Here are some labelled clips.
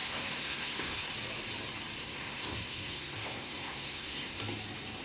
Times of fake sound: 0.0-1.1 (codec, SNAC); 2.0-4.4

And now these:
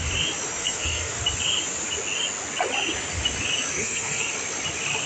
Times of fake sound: 0.6-1.2 (codec, SNAC); 3.7-4.3